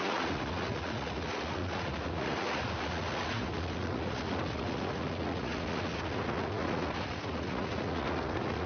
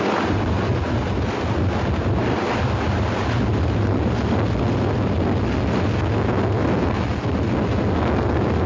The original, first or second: second